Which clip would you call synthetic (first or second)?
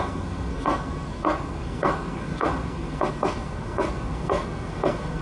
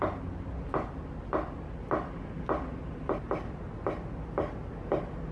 first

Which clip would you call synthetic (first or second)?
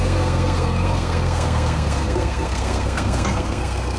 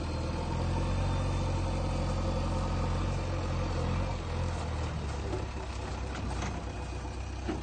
first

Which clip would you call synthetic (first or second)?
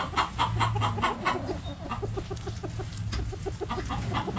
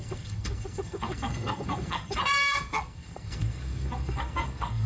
second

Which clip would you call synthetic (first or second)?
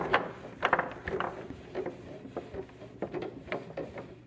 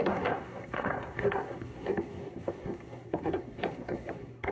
second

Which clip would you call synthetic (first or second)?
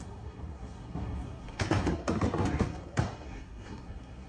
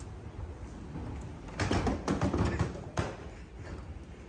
first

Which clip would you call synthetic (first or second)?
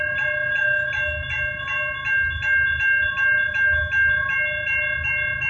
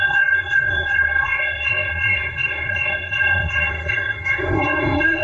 second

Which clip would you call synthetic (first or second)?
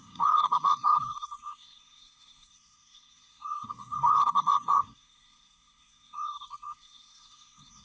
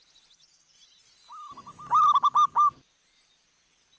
first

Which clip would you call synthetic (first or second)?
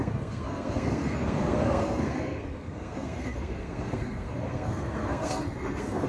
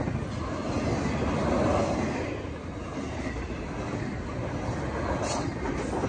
first